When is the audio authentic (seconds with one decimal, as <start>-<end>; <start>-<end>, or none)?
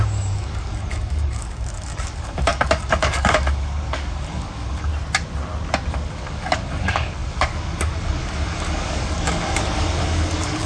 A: 4.9-5.9